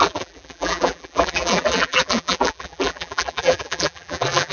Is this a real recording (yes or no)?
no